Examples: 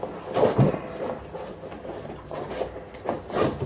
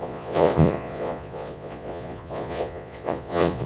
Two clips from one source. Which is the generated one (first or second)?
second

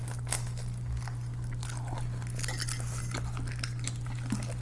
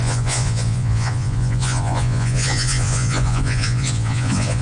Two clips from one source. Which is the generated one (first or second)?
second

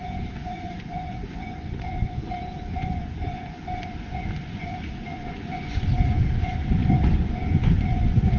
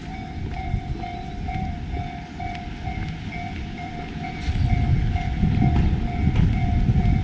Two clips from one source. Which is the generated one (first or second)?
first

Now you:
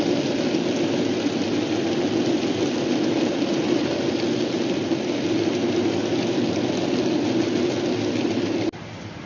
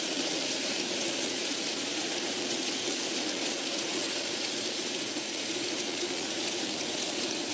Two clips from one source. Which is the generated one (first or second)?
second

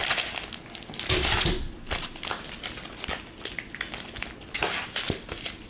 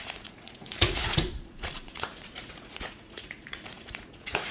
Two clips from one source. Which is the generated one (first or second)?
second